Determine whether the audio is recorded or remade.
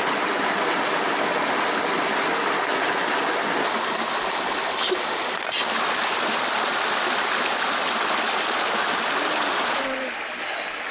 recorded